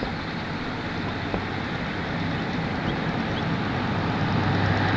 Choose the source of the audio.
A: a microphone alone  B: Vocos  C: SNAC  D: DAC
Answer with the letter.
A